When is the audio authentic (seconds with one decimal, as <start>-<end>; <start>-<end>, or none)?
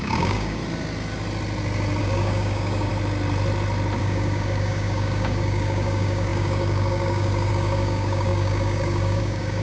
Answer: 0.6-2.0; 2.9-4.0